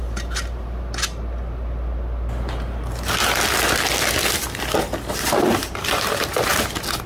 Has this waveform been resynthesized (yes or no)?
no